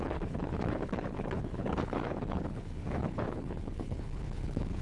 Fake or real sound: fake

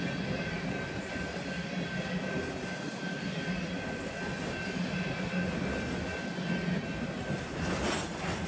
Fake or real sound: real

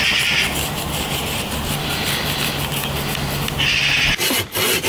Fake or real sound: real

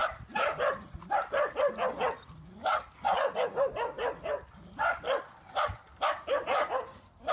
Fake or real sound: real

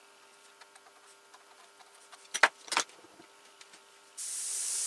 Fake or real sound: real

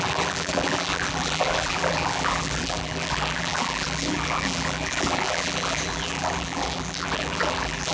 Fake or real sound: fake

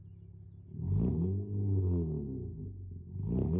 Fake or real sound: real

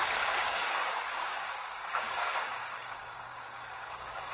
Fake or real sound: fake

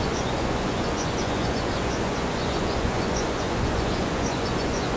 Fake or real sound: fake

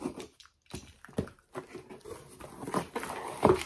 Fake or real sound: real